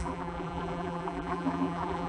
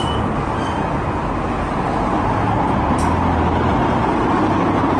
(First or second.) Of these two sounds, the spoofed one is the first